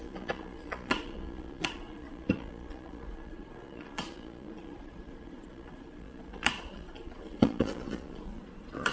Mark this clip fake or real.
fake